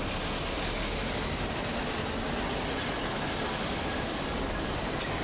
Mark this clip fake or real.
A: real